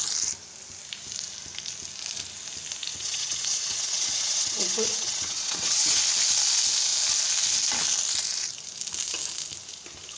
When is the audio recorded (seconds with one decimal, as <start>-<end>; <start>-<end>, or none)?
0.0-2.9; 6.0-10.2